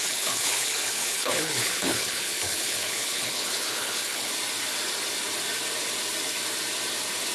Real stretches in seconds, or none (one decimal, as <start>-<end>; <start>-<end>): 4.3-7.3